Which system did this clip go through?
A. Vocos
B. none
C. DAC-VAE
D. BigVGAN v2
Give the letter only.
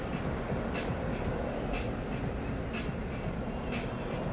B